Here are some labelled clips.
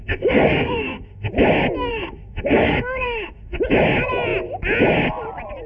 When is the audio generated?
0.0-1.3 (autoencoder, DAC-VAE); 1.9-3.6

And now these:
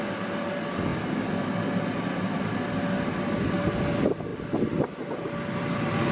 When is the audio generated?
none

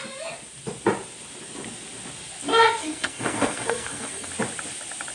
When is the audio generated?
2.5-4.3 (codec, SNAC)

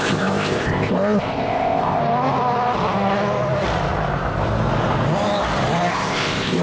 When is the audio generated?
0.0-2.0 (codec, ZipCodec); 5.9-6.6